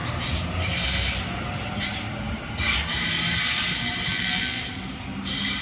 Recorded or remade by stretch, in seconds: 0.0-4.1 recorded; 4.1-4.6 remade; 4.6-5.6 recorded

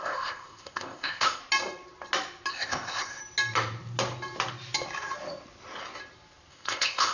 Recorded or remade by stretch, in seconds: 0.0-1.4 remade; 1.4-2.5 recorded; 2.5-3.2 remade; 3.2-6.5 recorded; 6.5-7.1 remade

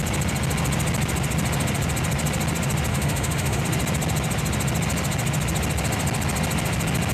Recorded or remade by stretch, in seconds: 0.0-2.9 recorded; 2.9-3.6 remade; 3.6-7.1 recorded

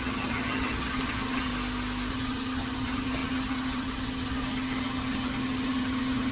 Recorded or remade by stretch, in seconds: 0.0-1.5 remade; 1.5-2.1 recorded; 2.1-6.3 remade

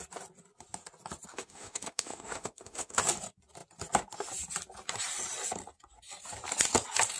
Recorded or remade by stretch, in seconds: 0.0-1.3 recorded; 1.3-3.0 remade; 3.0-7.2 recorded